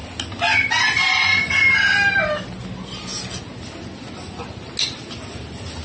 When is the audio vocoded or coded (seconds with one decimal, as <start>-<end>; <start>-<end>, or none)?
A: none